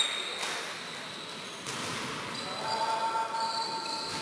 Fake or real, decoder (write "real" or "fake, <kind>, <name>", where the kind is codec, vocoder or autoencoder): real